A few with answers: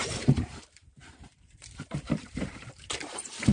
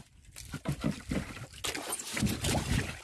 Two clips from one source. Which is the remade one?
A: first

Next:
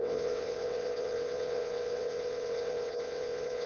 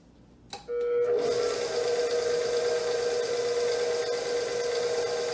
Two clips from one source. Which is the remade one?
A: first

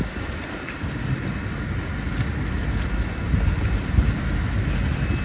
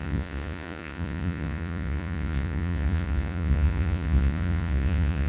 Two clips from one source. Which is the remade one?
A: second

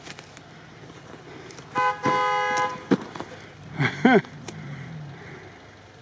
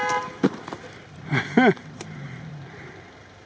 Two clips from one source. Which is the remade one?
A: second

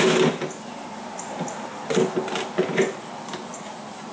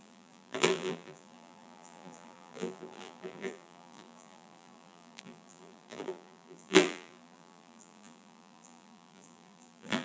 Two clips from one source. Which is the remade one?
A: second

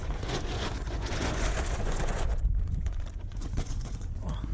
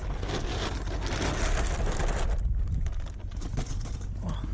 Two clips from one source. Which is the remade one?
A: first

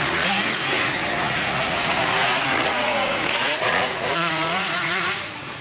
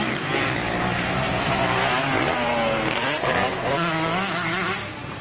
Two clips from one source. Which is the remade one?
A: first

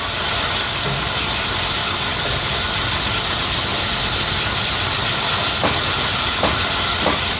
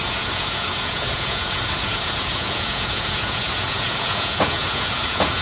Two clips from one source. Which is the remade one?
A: second